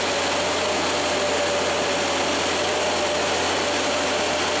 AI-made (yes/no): no